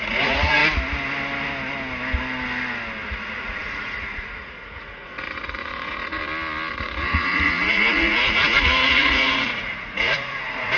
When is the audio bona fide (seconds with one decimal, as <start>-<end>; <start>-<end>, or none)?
0.6-3.1; 6.2-6.7